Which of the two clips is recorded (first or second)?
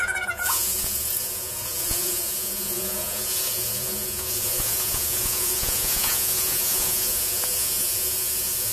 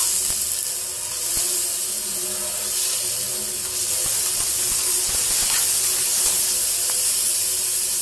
second